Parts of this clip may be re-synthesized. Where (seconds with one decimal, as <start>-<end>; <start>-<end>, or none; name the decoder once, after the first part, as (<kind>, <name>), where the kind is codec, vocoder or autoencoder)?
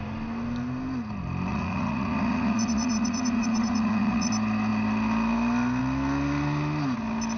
1.5-4.3 (vocoder, Vocos)